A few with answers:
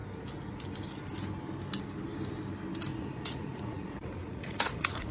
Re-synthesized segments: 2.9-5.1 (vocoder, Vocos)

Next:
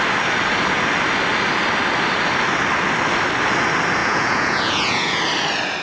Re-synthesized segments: 4.0-5.2 (vocoder, Vocos)

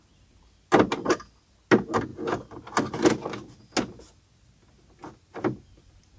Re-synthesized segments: none

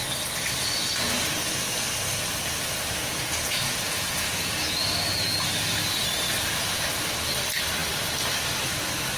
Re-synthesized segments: 3.0-4.8 (vocoder, Vocos)

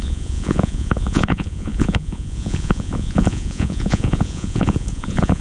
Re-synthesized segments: 0.0-5.4 (vocoder, Vocos)

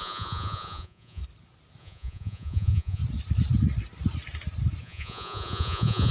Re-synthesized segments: 0.0-1.2 (vocoder, Vocos); 1.8-3.0; 4.8-6.1

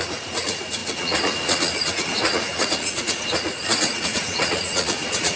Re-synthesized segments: 0.0-5.4 (vocoder, Vocos)

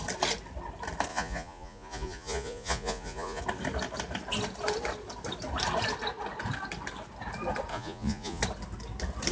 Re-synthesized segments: 1.1-3.4 (vocoder, Vocos); 7.7-8.4